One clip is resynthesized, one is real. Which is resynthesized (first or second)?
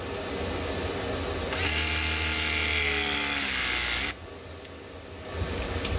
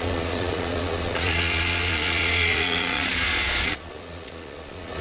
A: second